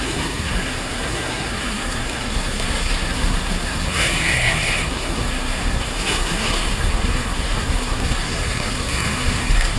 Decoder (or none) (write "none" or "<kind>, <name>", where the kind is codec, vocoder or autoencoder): codec, SNAC